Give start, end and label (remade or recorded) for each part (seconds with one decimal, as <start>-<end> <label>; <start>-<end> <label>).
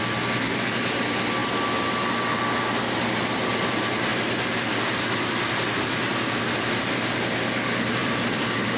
0.0-8.0 recorded; 8.0-8.8 remade